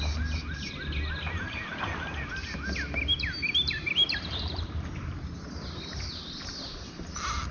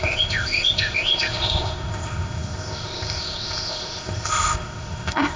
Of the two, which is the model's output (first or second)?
second